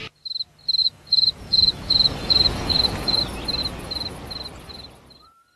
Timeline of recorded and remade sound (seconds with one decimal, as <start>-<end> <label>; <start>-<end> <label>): 0.0-0.8 recorded; 0.8-3.2 remade; 3.2-5.6 recorded